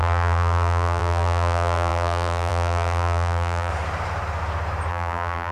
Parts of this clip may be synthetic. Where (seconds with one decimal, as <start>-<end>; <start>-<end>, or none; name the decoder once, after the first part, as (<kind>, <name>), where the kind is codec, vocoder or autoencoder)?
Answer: 0.0-3.7 (vocoder, BigVGAN v2); 4.9-5.5